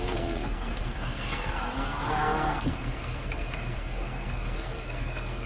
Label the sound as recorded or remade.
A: remade